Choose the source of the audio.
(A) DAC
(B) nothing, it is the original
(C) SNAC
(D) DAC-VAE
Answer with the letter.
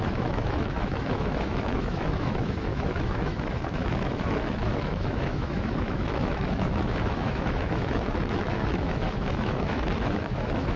D